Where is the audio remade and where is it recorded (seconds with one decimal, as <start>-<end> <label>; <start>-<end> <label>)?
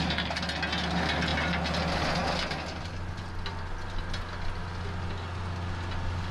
0.0-6.3 recorded